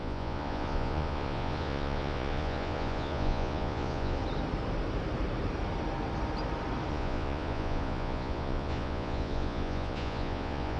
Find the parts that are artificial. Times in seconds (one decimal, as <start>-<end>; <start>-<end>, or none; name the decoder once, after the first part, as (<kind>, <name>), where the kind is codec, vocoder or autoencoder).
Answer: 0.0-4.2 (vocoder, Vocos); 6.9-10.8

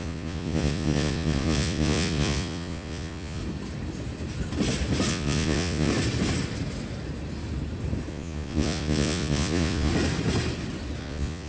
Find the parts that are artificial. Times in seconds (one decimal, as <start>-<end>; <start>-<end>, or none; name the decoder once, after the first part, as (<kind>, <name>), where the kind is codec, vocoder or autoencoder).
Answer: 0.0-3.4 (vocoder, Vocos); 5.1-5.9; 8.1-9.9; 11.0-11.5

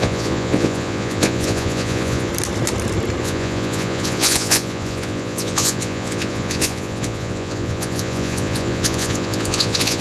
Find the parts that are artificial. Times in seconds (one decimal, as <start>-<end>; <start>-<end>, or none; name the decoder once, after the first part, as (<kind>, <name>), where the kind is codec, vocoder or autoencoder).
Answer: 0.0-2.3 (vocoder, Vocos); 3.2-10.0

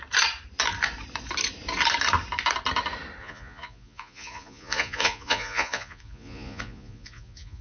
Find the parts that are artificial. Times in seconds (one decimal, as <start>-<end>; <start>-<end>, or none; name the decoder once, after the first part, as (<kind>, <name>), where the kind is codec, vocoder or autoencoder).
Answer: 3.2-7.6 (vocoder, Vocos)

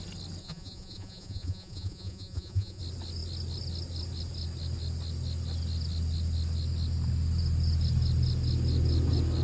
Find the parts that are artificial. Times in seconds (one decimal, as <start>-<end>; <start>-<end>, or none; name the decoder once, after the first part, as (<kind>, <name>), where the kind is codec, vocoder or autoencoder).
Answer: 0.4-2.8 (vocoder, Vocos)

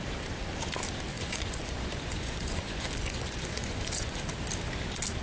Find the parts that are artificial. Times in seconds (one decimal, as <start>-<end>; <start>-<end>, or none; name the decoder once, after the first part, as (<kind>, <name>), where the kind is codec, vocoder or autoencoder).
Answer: 1.1-4.2 (vocoder, Vocos)

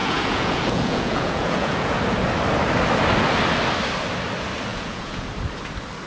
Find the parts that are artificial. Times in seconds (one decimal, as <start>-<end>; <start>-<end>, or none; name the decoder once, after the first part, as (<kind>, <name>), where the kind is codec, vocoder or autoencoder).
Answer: 0.0-2.0 (vocoder, Vocos); 4.7-5.3